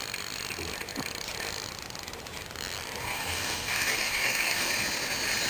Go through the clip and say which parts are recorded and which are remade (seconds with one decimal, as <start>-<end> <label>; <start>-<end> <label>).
0.0-3.0 recorded; 3.0-4.7 remade; 4.7-5.5 recorded